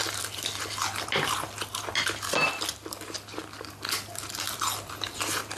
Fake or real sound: real